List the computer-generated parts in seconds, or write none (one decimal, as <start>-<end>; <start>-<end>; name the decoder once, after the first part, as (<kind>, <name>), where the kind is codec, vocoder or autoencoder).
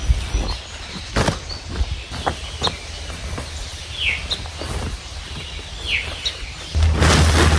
none